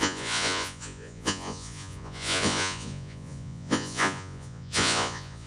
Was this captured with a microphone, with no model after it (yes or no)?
no